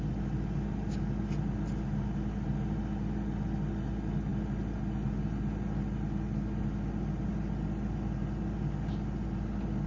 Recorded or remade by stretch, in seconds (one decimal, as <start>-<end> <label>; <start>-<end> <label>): 0.0-9.9 recorded